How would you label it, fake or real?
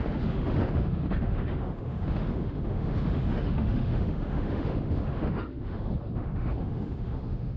fake